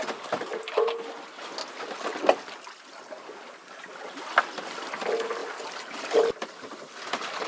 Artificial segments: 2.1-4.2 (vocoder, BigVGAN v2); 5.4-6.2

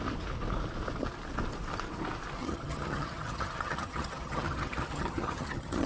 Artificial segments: 2.4-5.9 (vocoder, HiFi-GAN)

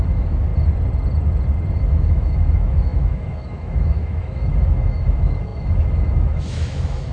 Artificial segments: 0.0-0.5 (autoencoder, DAC-VAE); 1.8-7.1

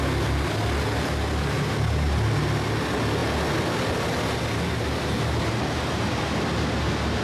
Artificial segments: none